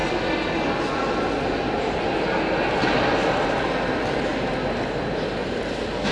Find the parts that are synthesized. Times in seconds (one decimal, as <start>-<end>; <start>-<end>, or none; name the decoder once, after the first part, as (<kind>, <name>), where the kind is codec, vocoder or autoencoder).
none